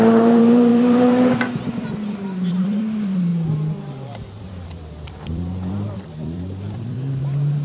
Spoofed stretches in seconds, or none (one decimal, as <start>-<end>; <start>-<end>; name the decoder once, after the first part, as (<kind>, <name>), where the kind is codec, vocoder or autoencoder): 0.0-3.3 (vocoder, BigVGAN v2); 4.4-7.6